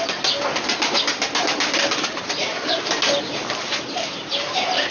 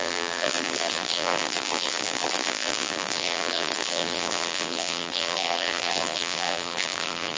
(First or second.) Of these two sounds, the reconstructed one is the second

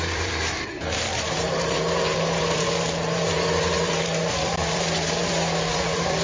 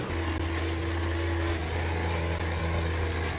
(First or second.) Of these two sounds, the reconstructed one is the first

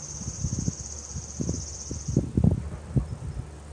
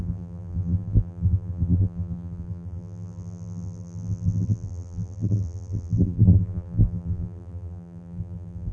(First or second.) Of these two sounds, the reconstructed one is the second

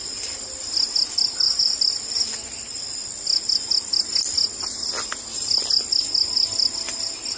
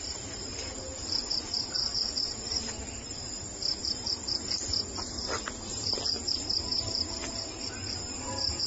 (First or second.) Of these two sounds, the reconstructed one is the second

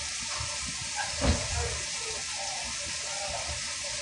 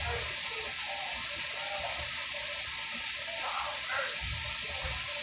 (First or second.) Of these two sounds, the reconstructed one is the first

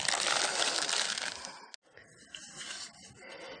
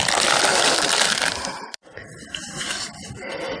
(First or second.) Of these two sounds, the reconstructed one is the second